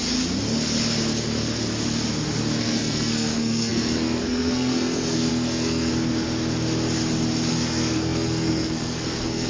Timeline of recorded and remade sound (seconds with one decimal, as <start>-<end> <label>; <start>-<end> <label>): 0.0-2.6 recorded; 2.6-5.9 remade; 5.9-7.5 recorded; 7.5-9.5 remade